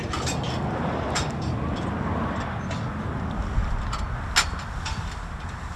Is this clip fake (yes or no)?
no